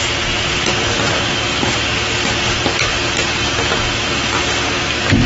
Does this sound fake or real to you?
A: real